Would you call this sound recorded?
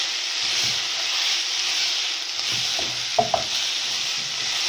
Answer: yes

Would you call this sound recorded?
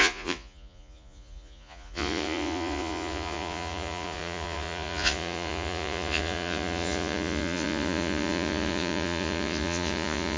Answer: no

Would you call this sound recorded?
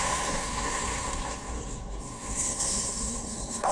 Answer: no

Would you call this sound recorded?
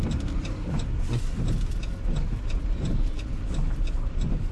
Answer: yes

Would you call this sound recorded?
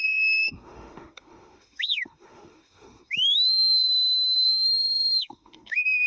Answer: no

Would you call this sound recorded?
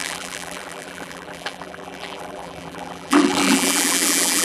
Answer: no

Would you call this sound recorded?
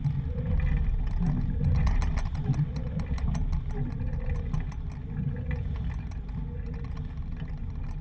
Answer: yes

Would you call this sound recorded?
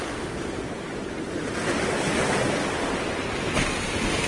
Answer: yes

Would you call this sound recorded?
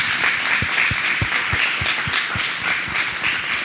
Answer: yes